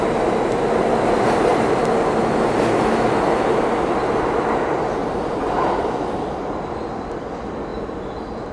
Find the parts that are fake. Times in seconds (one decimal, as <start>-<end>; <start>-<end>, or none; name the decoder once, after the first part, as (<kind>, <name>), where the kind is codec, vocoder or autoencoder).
5.0-5.9 (vocoder, BigVGAN v2)